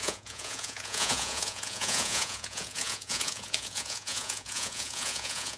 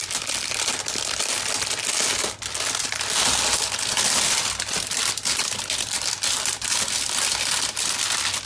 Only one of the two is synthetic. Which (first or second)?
first